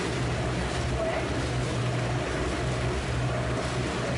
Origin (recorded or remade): recorded